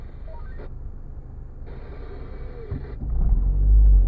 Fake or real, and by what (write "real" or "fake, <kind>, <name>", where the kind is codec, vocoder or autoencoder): real